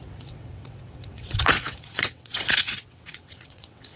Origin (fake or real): fake